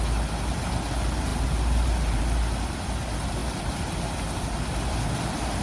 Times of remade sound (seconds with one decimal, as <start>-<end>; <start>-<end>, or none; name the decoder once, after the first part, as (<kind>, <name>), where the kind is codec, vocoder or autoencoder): 1.3-2.2 (vocoder, BigVGAN v2)